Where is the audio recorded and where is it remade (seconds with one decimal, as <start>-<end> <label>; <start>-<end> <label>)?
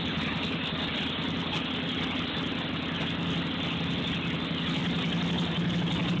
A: 0.0-6.2 recorded